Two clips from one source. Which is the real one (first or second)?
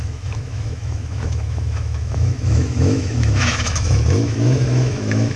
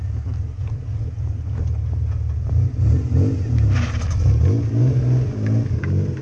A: second